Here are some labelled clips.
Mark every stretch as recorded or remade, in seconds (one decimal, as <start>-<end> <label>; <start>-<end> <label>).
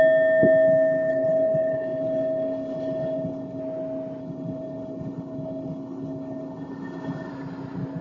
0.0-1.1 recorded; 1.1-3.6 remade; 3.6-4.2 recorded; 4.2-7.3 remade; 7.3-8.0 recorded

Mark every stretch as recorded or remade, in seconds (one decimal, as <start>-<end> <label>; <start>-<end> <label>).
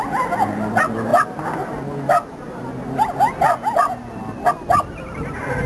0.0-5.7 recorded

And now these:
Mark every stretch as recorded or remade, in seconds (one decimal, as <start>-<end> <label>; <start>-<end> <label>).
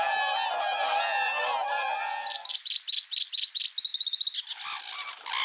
0.0-5.4 recorded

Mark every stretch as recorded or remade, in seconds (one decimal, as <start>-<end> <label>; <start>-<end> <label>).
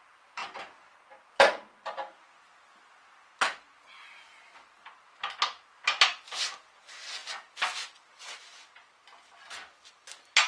0.0-10.5 recorded